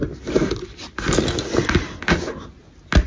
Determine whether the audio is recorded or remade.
recorded